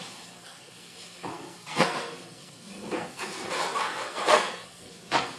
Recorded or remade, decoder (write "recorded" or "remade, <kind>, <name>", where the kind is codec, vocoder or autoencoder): remade, codec, SNAC